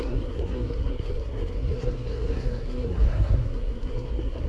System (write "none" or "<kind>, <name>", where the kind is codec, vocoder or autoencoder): codec, SNAC